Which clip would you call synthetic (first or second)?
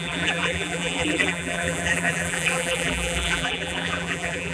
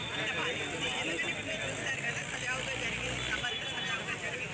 first